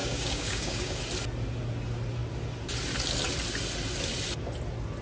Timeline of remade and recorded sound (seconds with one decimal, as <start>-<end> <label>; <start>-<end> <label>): 0.0-1.0 remade; 1.0-5.0 recorded